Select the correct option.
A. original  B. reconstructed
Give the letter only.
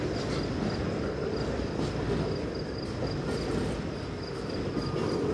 A